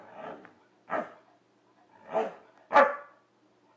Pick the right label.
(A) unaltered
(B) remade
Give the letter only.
A